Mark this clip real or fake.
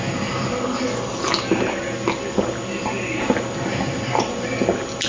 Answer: real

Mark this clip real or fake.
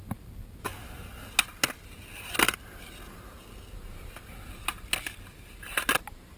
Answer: real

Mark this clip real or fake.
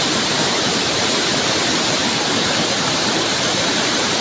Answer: fake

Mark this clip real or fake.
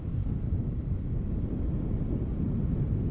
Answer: real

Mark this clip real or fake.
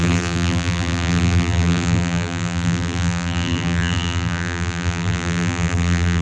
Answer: fake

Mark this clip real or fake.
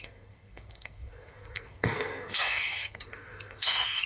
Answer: fake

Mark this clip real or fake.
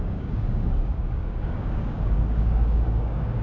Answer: fake